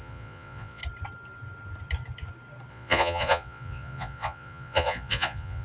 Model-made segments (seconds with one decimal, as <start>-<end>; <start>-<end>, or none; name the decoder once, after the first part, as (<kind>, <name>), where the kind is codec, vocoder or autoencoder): 0.0-0.8 (vocoder, Vocos); 2.7-5.6